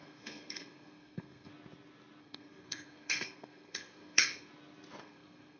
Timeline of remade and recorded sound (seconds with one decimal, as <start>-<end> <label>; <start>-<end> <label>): 0.0-1.5 remade; 1.5-2.2 recorded; 2.2-4.5 remade; 4.5-5.0 recorded; 5.0-5.6 remade